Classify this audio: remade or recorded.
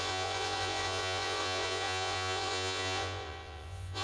remade